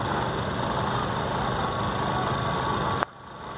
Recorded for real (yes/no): yes